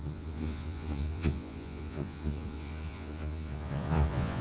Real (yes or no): no